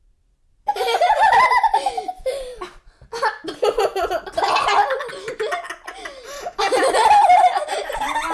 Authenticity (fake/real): real